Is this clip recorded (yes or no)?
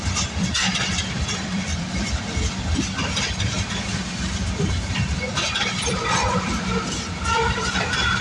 no